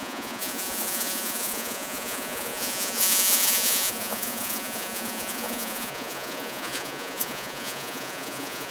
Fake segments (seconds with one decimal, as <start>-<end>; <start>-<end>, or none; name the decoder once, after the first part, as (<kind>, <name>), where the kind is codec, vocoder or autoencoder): 0.0-8.7 (vocoder, Vocos)